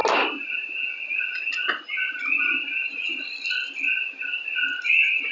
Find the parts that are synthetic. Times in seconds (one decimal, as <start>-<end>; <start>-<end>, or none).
none